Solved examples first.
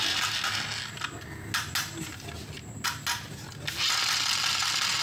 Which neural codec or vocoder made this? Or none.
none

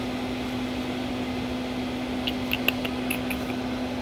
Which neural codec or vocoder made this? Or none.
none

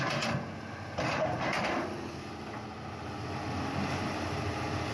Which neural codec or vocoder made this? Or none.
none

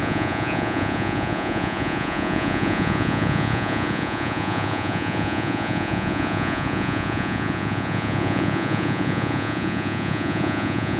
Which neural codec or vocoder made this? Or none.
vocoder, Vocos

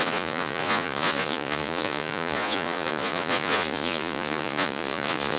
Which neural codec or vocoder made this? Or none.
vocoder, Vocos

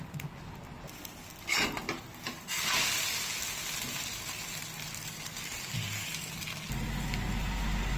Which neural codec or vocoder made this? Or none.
none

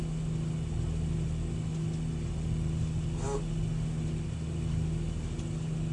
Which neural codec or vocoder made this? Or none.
none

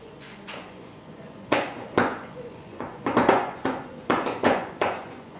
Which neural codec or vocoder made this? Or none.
vocoder, Vocos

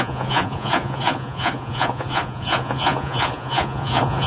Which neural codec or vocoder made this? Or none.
vocoder, Vocos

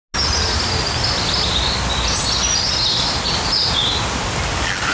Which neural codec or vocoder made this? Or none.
none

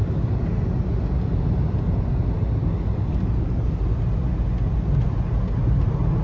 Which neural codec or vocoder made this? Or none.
none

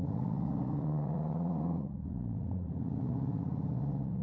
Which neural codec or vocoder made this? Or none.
vocoder, Vocos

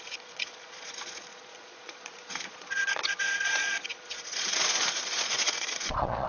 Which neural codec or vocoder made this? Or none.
vocoder, Vocos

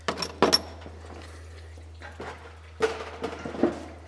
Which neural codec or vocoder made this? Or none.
none